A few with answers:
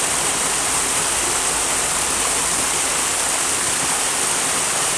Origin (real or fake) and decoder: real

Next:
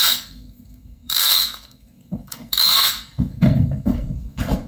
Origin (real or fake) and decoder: fake, codec, SNAC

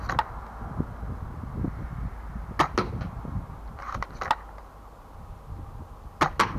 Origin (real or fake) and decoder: real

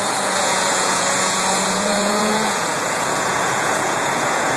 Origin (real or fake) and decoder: fake, vocoder, Vocos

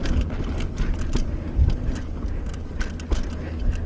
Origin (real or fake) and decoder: real